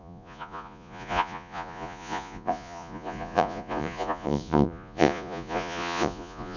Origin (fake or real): fake